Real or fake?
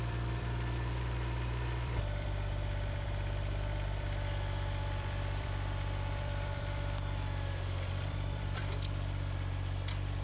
fake